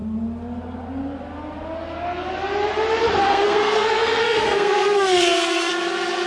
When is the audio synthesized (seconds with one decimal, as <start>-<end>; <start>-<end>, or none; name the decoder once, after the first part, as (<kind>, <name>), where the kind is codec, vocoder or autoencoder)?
3.3-5.7 (codec, SNAC)